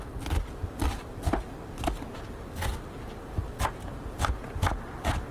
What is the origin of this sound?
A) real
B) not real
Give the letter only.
A